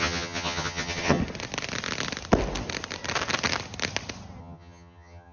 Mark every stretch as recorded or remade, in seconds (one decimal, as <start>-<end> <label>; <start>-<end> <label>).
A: 0.0-1.2 remade; 1.2-4.4 recorded; 4.4-5.3 remade